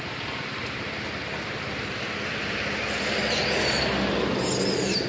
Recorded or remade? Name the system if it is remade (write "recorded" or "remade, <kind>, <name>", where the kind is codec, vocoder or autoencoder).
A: recorded